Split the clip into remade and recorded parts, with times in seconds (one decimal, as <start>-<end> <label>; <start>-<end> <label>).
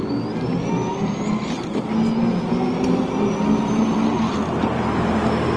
0.0-5.6 recorded